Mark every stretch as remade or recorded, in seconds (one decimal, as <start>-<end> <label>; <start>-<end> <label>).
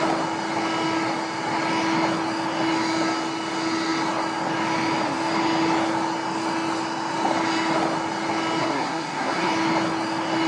0.0-8.6 recorded; 8.6-9.5 remade; 9.5-10.5 recorded